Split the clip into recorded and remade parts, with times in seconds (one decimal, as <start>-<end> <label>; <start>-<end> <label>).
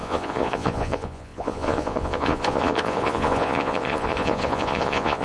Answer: 0.0-5.2 remade